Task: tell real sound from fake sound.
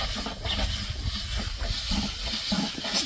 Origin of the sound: real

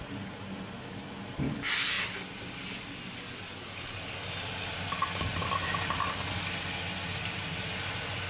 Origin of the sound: real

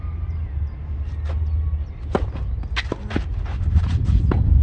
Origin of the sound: real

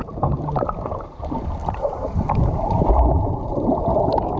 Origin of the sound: real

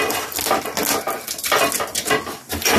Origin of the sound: real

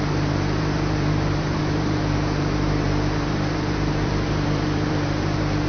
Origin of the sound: fake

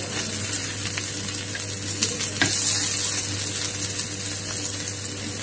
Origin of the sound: real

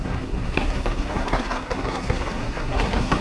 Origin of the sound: fake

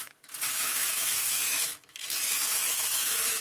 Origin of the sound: fake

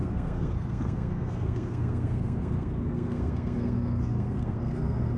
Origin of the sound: fake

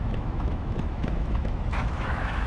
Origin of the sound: fake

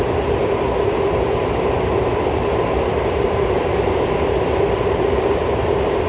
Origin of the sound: real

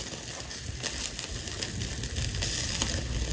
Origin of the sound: real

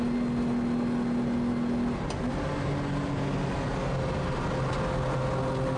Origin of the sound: real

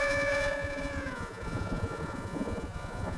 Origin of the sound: fake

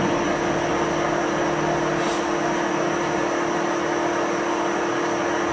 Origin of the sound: real